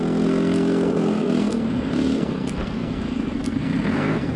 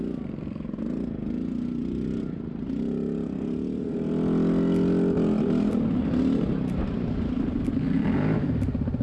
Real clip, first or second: second